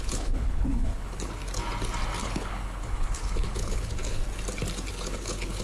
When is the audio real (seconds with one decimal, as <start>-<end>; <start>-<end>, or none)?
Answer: 1.4-2.2; 4.2-4.9